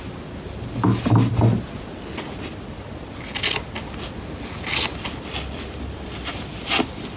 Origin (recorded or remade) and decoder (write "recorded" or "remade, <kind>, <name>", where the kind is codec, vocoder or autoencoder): recorded